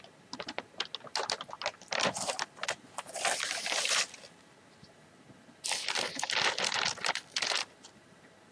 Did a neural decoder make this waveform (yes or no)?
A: no